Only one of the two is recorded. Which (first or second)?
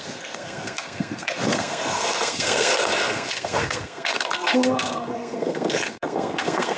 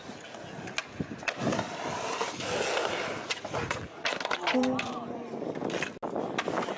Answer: second